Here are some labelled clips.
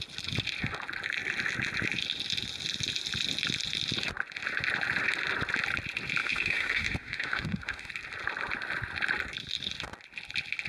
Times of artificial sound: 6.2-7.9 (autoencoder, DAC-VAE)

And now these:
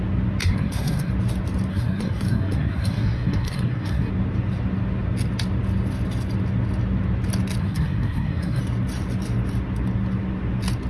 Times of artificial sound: 0.4-1.1 (codec, SNAC); 1.7-4.1; 7.6-8.6

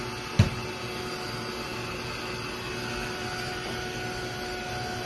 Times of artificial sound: none

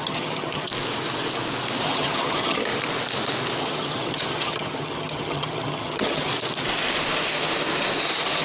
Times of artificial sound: 0.0-0.7 (vocoder, HiFi-GAN); 1.8-2.7; 3.6-6.3

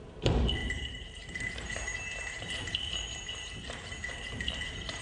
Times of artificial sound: 0.0-5.0 (vocoder, BigVGAN v2)

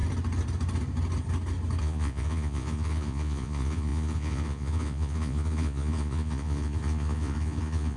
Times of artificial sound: 1.8-8.0 (vocoder, Vocos)

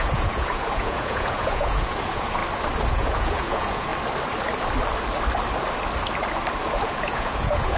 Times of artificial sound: 0.0-2.4 (vocoder, Vocos); 2.9-3.9; 6.7-7.8

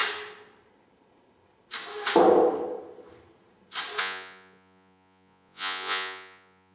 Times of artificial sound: 4.0-6.7 (vocoder, Vocos)